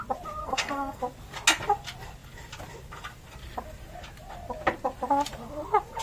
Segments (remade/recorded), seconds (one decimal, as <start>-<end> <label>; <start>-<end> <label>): 0.0-0.4 recorded; 0.4-1.0 remade; 1.0-6.0 recorded

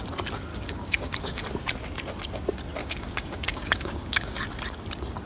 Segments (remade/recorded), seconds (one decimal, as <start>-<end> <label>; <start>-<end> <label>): 0.0-0.5 recorded; 0.5-1.4 remade; 1.4-2.8 recorded; 2.8-4.4 remade; 4.4-5.3 recorded

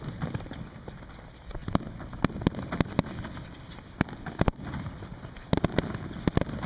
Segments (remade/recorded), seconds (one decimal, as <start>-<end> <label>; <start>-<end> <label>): 0.0-6.7 recorded

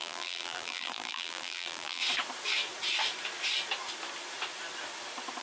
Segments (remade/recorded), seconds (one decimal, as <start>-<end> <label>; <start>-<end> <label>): 0.0-2.0 remade; 2.0-5.4 recorded

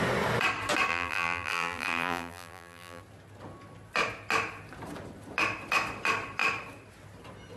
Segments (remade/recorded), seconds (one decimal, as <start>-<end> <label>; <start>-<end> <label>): 0.0-0.9 recorded; 0.9-3.0 remade; 3.0-7.6 recorded

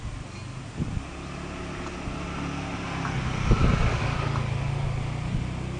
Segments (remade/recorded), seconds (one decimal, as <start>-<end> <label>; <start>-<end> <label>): 0.0-5.8 recorded

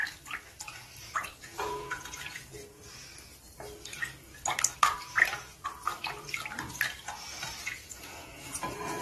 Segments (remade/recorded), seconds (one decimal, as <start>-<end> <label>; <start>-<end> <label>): 0.0-1.0 recorded; 1.0-2.8 remade; 2.8-7.6 recorded; 7.6-9.0 remade